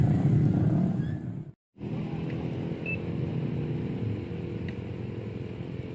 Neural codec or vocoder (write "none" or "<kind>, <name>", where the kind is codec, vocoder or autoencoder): none